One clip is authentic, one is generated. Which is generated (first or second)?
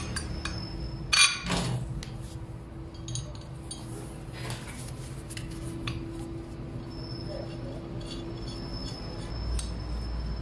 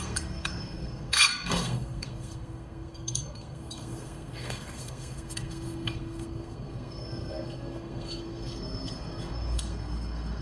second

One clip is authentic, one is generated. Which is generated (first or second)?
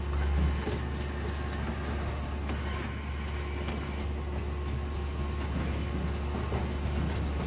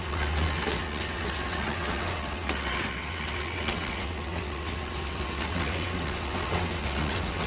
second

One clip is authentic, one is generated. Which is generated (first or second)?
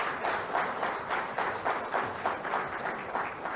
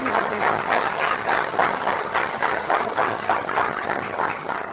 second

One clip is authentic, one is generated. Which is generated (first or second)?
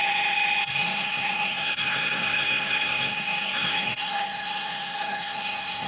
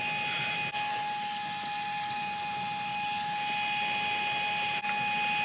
first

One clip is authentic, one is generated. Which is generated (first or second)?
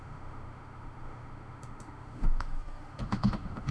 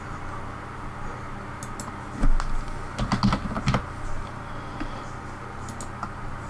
first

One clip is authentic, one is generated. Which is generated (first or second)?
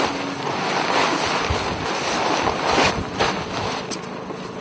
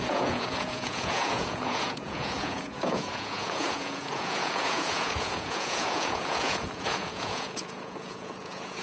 second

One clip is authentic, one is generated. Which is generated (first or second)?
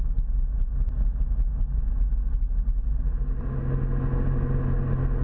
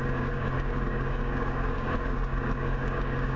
second